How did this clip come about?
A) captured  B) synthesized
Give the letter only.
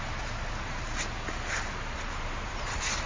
A